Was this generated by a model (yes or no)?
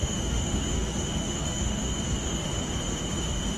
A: yes